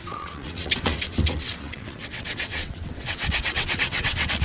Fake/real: fake